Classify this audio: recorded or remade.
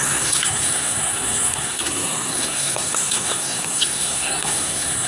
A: remade